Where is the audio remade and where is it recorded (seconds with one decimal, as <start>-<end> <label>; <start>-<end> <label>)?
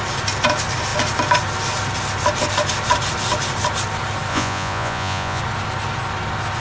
0.0-4.3 recorded; 4.3-5.4 remade; 5.4-6.6 recorded